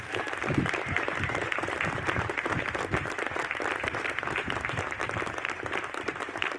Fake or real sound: fake